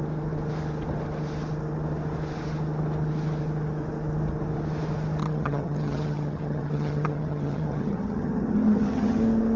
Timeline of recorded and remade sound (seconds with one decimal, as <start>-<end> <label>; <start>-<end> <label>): 0.0-5.2 recorded; 5.2-9.2 remade; 9.2-9.6 recorded